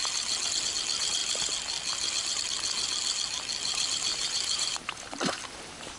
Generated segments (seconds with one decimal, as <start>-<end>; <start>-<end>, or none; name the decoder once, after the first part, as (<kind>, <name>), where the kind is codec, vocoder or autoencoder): 4.1-5.4 (vocoder, BigVGAN v2)